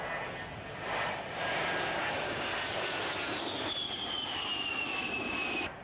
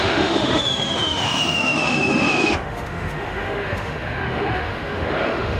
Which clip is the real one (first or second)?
first